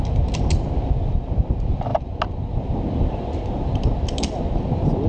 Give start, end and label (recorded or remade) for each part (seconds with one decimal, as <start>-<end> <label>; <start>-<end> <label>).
0.0-5.1 recorded